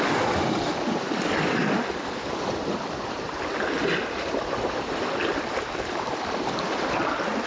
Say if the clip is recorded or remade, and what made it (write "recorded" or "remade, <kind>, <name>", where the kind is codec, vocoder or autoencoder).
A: recorded